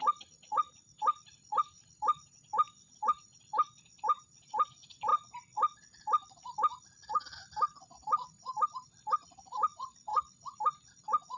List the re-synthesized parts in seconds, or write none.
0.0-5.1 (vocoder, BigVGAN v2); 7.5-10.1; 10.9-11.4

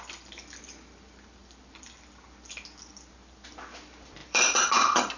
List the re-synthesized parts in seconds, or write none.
4.2-5.2 (vocoder, BigVGAN v2)

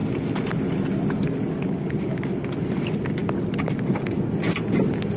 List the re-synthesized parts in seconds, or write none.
none

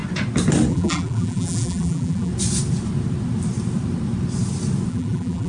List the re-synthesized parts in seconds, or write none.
0.7-2.3 (vocoder, BigVGAN v2); 4.9-5.5